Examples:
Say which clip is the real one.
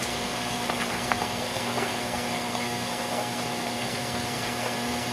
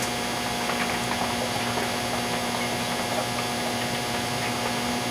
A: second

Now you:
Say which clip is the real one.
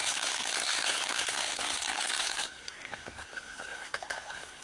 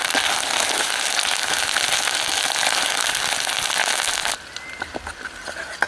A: second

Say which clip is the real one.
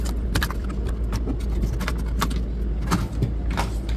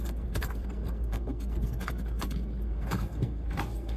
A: first